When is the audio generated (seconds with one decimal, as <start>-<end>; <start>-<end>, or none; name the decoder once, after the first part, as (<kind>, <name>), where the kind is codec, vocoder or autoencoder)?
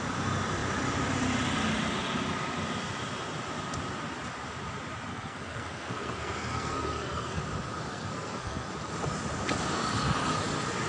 5.1-7.4 (codec, SNAC); 7.9-8.7